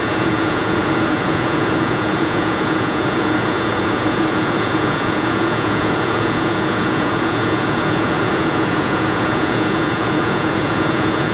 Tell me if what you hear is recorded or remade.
remade